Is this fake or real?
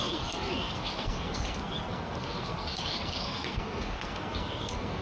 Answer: fake